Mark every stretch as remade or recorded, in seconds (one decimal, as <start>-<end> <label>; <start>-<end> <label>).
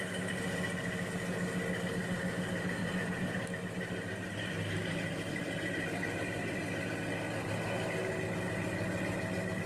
0.0-2.8 recorded; 2.8-6.6 remade; 6.6-9.7 recorded